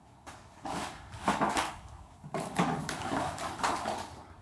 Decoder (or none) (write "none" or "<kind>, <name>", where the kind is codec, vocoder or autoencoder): codec, DAC